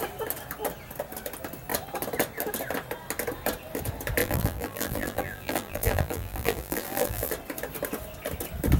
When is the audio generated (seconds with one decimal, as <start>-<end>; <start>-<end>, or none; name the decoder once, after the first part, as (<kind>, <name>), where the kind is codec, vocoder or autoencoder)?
4.2-7.3 (vocoder, BigVGAN v2)